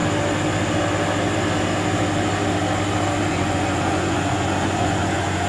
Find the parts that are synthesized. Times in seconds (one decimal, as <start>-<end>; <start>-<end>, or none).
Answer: 3.3-5.5